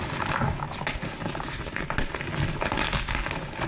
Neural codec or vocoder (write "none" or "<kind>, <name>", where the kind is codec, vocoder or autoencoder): none